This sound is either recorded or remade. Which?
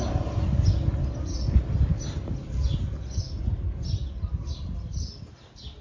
recorded